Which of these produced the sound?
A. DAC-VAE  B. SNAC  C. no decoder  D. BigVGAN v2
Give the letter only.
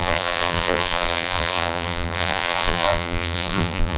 D